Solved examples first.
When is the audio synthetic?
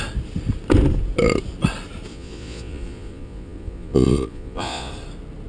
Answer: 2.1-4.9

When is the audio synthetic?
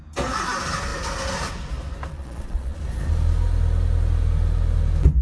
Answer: 2.1-2.8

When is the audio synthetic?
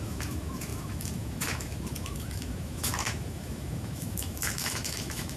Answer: 0.0-5.4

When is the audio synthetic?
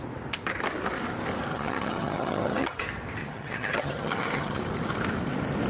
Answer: 1.5-2.8; 3.2-4.6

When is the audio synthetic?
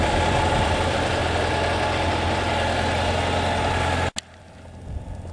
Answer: 0.0-1.2; 4.4-5.3